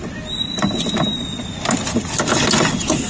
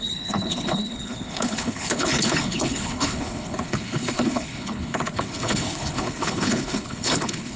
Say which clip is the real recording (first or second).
first